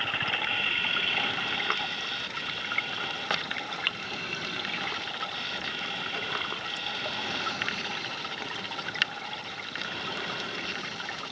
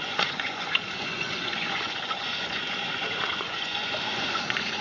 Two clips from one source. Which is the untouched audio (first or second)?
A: first